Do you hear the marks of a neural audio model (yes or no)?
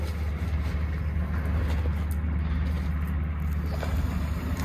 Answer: no